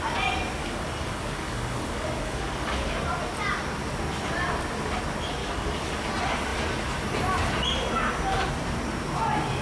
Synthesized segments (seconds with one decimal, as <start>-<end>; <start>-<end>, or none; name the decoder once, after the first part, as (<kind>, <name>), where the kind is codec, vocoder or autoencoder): 0.6-2.9 (codec, DAC); 5.4-5.9